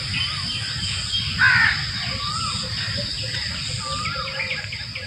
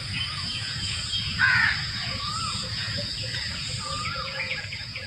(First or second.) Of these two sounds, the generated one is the second